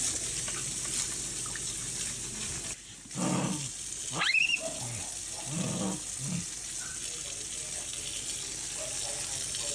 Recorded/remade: recorded